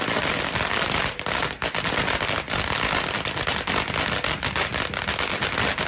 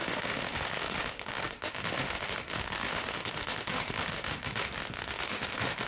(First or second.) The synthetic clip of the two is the second